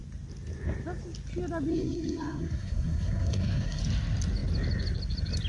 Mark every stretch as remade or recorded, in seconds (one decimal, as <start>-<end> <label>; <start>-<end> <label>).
0.0-1.7 recorded; 1.7-3.8 remade; 3.8-5.5 recorded